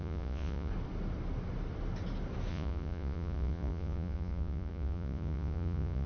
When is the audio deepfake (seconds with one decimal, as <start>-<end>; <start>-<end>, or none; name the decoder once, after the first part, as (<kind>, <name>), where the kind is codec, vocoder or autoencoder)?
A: 0.0-0.7 (vocoder, Vocos); 2.5-6.1